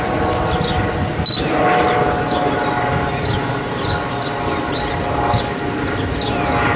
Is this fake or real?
real